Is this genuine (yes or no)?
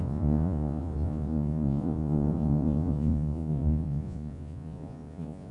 no